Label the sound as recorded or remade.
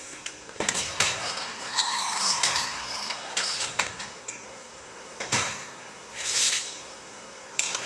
remade